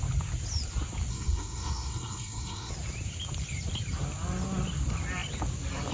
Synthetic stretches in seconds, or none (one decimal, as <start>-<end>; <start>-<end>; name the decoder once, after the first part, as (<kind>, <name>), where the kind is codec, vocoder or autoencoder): 1.1-2.7 (codec, SNAC)